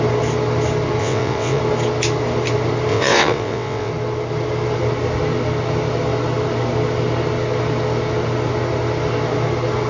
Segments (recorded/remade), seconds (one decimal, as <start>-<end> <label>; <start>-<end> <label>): 0.0-1.0 recorded; 1.0-1.6 remade; 1.6-2.9 recorded; 2.9-3.9 remade; 3.9-9.9 recorded